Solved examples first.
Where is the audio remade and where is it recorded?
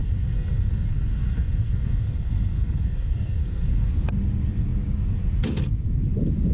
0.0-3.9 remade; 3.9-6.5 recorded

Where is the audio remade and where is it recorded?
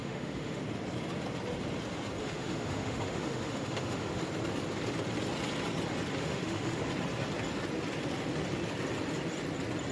0.0-0.6 remade; 0.6-2.2 recorded; 2.2-4.2 remade; 4.2-6.2 recorded; 6.2-6.8 remade; 6.8-9.9 recorded